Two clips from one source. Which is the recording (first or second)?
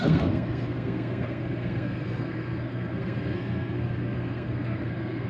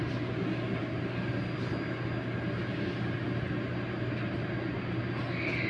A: second